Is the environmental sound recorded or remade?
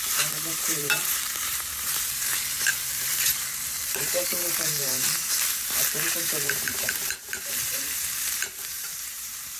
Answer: remade